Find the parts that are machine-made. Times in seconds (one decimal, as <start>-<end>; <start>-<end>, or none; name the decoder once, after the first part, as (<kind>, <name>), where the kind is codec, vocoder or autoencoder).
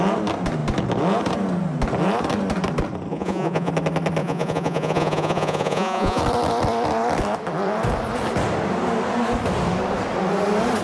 3.1-3.7 (vocoder, Vocos); 4.2-6.2